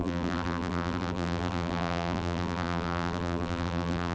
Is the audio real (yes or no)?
no